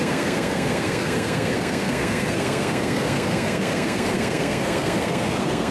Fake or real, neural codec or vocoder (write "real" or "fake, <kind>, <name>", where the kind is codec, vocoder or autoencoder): fake, codec, SNAC